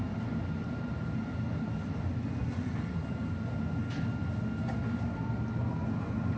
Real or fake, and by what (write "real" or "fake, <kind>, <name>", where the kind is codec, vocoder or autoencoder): real